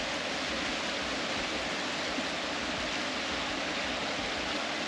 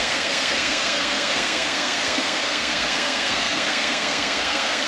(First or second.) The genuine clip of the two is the first